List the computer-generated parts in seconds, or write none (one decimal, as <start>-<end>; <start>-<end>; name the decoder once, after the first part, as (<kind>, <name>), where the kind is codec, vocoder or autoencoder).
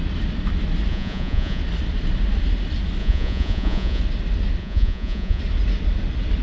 0.9-1.6 (vocoder, Vocos); 3.0-4.0; 4.6-5.4